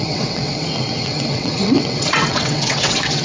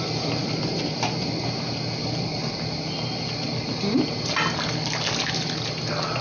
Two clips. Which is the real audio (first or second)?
second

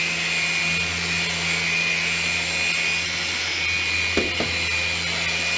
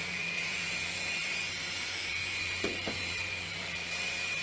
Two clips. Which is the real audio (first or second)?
first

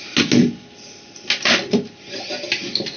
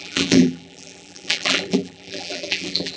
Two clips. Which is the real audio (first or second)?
first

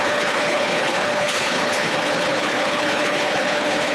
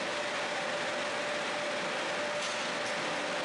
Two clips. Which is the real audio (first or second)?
second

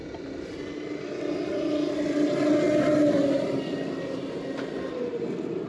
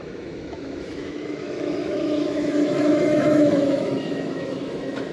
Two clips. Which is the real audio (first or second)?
first